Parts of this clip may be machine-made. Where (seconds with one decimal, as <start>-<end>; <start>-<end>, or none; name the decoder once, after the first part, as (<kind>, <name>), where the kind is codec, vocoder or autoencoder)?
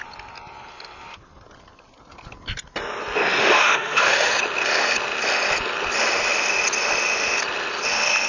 3.4-4.3 (autoencoder, DAC-VAE)